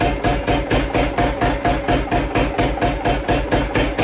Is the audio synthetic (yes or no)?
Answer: no